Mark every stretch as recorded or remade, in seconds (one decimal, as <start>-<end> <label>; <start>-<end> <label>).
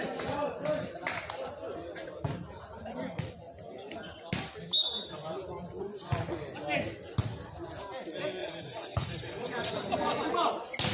0.0-8.4 recorded; 8.4-10.5 remade; 10.5-10.9 recorded